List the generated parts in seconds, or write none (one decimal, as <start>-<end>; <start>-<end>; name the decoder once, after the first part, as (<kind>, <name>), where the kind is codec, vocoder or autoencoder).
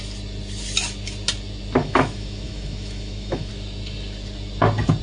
1.8-3.5 (autoencoder, DAC-VAE)